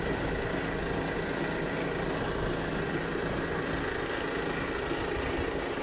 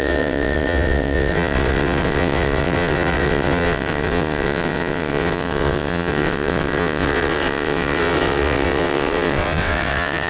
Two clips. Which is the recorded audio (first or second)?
first